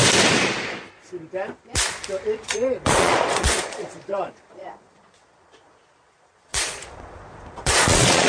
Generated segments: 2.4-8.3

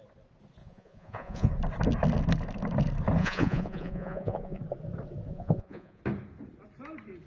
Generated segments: 0.6-1.5; 3.2-4.6; 5.3-6.0

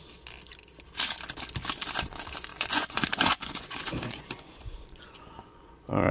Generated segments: 2.5-6.1

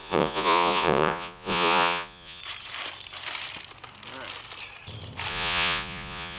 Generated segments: 0.0-2.4; 5.3-6.4

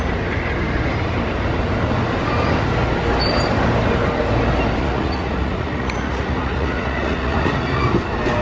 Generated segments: 4.8-7.9